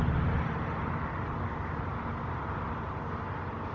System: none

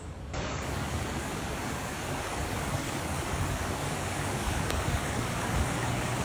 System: codec, DAC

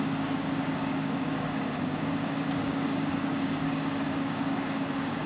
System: codec, DAC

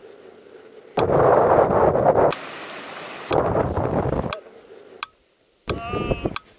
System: none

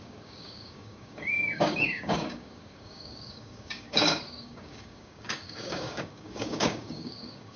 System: codec, DAC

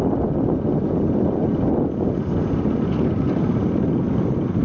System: none